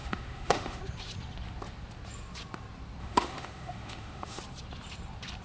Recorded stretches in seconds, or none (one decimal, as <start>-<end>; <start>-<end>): 0.8-3.0; 4.4-5.4